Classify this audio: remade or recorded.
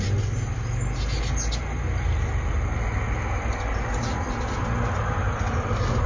recorded